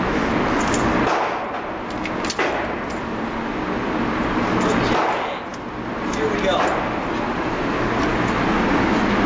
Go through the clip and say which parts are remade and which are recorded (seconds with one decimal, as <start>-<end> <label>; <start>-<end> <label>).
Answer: 0.0-9.3 recorded